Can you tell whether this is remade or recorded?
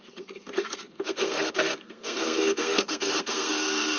remade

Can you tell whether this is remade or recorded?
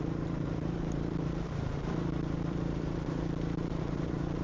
remade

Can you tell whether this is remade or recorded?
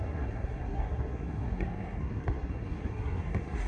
remade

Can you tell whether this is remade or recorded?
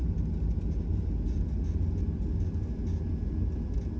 recorded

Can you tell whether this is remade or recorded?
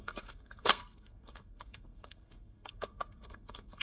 remade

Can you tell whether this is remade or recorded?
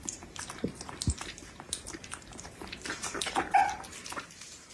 remade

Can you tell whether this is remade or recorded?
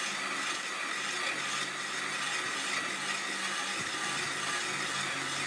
recorded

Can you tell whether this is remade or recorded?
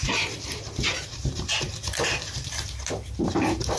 remade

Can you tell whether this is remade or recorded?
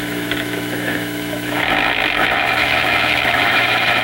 remade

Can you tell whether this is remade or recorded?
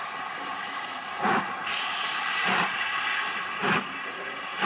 remade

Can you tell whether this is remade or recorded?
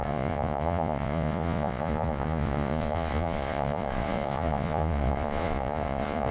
remade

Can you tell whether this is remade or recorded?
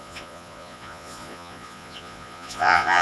remade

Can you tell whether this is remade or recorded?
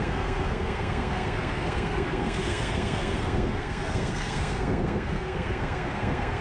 remade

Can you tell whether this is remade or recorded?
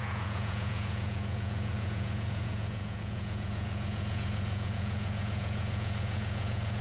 remade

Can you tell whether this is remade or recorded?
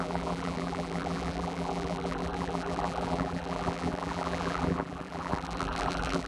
remade